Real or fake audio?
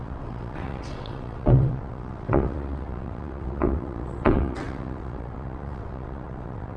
fake